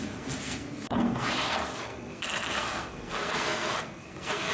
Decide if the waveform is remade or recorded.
remade